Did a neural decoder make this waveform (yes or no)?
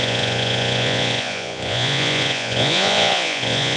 yes